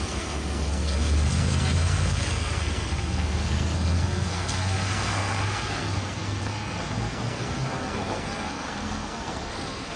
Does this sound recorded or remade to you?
remade